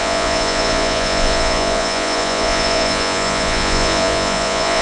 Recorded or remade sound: remade